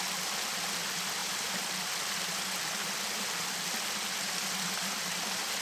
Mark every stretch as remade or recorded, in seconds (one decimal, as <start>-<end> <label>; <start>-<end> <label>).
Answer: 0.0-5.6 recorded